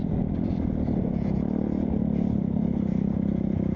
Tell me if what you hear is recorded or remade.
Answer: recorded